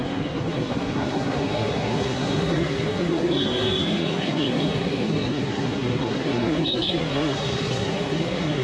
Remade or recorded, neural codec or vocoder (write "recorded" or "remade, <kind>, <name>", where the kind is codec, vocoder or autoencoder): remade, codec, SNAC